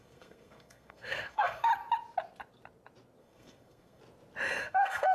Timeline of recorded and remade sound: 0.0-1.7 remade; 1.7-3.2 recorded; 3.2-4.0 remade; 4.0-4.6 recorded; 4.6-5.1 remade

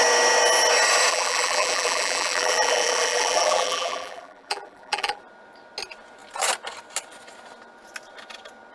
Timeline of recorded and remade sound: 0.0-1.1 recorded; 1.1-5.2 remade; 5.2-8.7 recorded

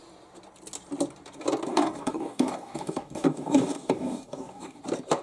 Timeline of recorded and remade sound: 0.0-1.7 recorded; 1.7-4.8 remade; 4.8-5.2 recorded

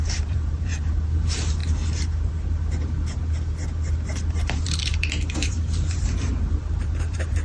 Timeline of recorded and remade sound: 0.0-1.6 remade; 1.6-4.3 recorded; 4.3-7.4 remade

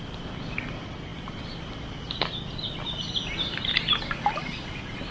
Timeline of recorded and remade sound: 0.0-5.1 recorded

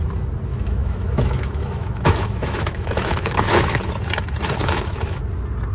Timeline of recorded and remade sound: 0.0-0.5 recorded; 0.5-3.9 remade; 3.9-4.6 recorded; 4.6-5.2 remade; 5.2-5.7 recorded

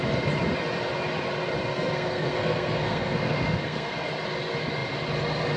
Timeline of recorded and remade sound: 0.0-1.7 recorded; 1.7-4.1 remade; 4.1-5.6 recorded